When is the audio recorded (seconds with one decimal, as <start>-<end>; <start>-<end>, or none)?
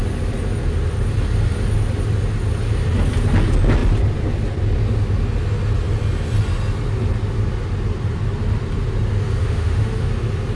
0.0-9.4; 10.1-10.6